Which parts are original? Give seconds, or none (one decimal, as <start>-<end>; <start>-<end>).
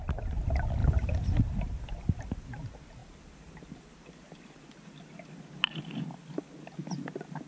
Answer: 0.0-0.8; 1.4-7.5